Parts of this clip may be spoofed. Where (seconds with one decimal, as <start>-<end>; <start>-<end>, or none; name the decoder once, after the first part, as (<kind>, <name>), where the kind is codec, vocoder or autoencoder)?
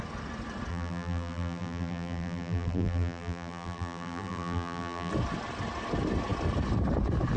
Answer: 0.7-5.1 (vocoder, BigVGAN v2)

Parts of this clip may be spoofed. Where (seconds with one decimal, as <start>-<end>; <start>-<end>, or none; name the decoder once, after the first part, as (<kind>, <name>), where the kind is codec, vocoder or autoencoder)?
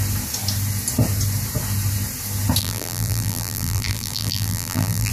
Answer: 2.6-5.1 (vocoder, BigVGAN v2)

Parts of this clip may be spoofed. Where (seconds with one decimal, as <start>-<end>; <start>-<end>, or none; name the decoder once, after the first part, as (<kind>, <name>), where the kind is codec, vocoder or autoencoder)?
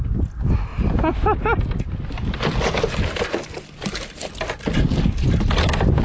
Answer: none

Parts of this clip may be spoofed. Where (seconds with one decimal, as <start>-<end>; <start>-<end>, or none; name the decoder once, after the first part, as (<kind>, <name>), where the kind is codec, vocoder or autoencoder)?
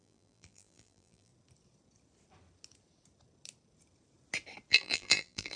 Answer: 0.0-1.3 (vocoder, BigVGAN v2); 4.7-5.6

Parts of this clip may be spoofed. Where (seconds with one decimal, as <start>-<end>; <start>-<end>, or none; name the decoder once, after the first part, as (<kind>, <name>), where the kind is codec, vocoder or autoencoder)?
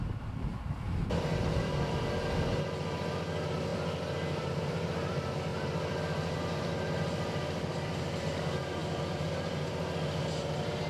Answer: 0.0-10.9 (vocoder, BigVGAN v2)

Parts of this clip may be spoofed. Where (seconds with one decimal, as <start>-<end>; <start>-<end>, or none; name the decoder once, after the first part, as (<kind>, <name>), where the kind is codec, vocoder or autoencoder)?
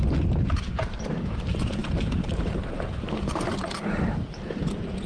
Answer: 0.0-5.1 (vocoder, BigVGAN v2)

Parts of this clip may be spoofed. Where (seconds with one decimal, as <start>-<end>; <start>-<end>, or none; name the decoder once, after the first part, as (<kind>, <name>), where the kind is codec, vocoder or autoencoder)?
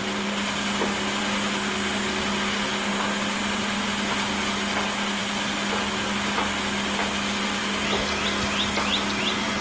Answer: 0.0-1.2 (vocoder, BigVGAN v2); 2.9-3.8; 5.2-7.6